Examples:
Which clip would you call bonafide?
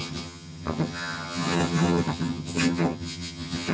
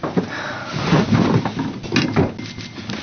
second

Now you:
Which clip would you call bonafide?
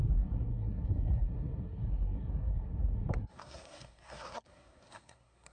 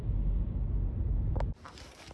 second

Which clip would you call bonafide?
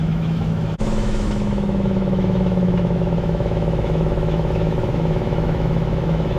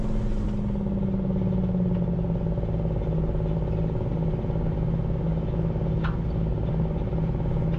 second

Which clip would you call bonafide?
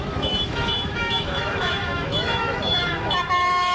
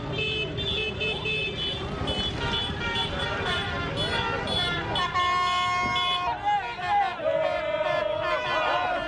second